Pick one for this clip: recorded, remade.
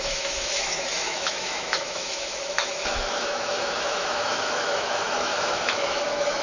remade